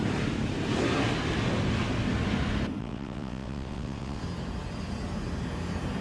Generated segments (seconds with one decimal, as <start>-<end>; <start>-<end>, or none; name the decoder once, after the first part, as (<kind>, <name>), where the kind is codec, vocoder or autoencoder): 2.8-4.2 (vocoder, WaveNeXt)